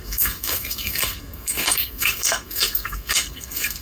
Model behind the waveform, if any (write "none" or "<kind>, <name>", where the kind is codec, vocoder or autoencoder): codec, SNAC